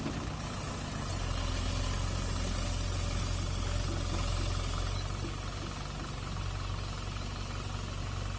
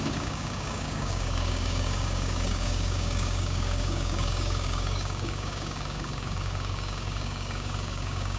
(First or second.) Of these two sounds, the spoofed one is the second